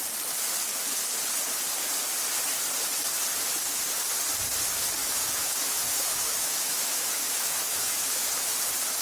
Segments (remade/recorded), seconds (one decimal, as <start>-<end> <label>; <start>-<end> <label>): 0.0-5.0 recorded; 5.0-8.3 remade; 8.3-9.0 recorded